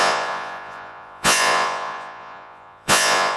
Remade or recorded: remade